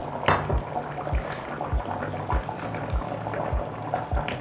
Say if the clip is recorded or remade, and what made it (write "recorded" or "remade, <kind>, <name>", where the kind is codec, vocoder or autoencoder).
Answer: recorded